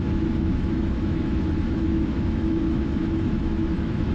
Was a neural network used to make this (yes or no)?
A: yes